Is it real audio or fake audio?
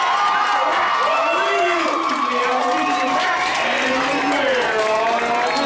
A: real